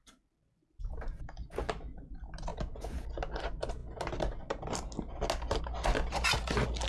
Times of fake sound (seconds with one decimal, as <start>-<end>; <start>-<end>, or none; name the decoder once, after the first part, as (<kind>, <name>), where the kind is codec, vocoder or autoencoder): none